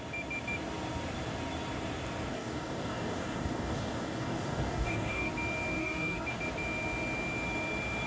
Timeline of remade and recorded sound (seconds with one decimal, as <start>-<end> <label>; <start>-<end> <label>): 0.0-2.3 recorded; 2.3-5.3 remade; 5.3-5.8 recorded; 5.8-6.4 remade; 6.4-8.1 recorded